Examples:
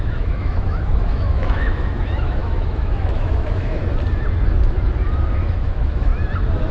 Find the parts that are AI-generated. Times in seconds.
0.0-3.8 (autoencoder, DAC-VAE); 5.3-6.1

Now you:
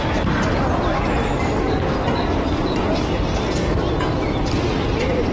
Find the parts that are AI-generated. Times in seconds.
0.0-3.8 (vocoder, BigVGAN v2); 4.7-5.3

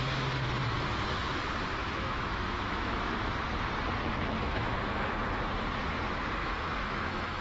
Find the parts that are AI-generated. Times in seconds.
1.8-3.3 (autoencoder, DAC-VAE); 4.0-4.7; 6.4-7.4

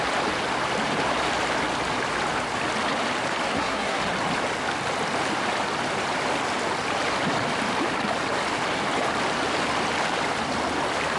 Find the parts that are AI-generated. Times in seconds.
3.5-4.0 (codec, SNAC)

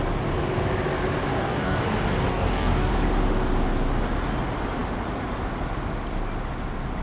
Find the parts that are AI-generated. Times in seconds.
1.3-1.8 (codec, DAC); 2.3-2.9